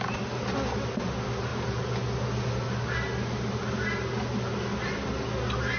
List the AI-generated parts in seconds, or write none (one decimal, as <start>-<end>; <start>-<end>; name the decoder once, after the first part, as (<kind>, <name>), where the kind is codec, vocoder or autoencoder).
none